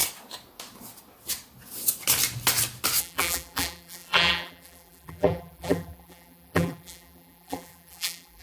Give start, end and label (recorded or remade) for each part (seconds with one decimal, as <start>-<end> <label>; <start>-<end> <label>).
0.0-3.0 recorded; 3.0-8.4 remade